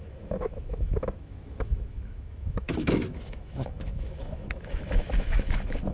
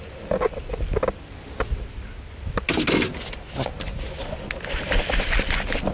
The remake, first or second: first